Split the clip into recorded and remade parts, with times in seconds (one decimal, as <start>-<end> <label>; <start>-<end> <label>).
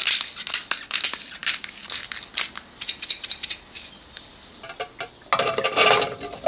0.0-6.5 recorded